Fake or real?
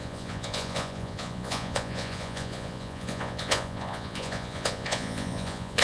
fake